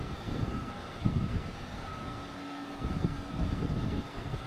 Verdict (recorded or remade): remade